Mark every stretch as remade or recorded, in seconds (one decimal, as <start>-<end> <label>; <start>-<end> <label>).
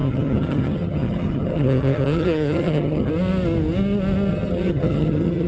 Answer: 0.0-3.1 remade; 3.1-4.3 recorded; 4.3-5.5 remade